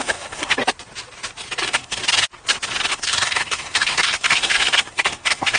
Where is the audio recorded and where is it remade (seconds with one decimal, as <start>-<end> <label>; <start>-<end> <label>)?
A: 0.0-0.6 remade; 0.6-1.6 recorded; 1.6-2.0 remade; 2.0-2.9 recorded; 2.9-5.6 remade